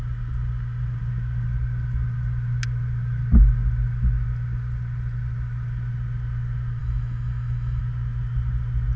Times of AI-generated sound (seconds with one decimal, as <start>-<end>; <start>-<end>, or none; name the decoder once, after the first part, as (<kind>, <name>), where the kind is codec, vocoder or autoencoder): 6.8-7.8 (autoencoder, DAC-VAE)